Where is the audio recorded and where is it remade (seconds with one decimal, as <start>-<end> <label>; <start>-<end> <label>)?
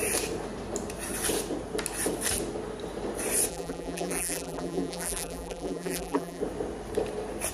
0.0-3.5 recorded; 3.5-6.4 remade; 6.4-7.5 recorded